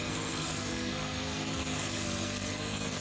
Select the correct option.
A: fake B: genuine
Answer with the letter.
A